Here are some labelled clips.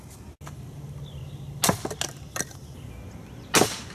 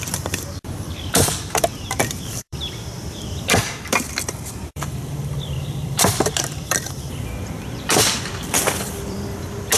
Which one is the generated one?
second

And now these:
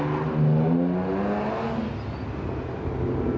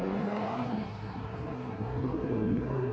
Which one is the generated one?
second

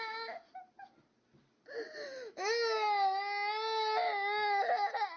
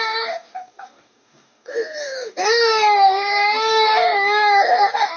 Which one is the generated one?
second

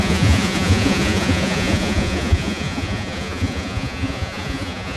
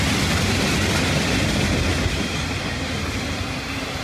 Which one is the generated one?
first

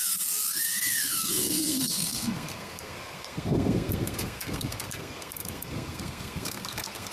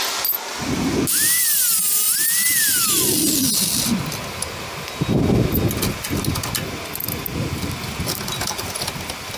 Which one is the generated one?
first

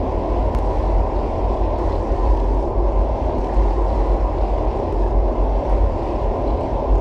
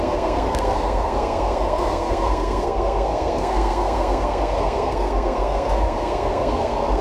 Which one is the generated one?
second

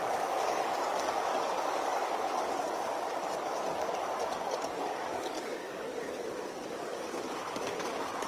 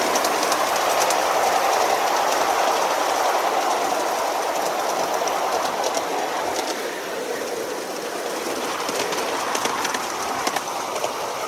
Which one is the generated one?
first